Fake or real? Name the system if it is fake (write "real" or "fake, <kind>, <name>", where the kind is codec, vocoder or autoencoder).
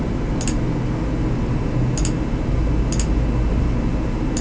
real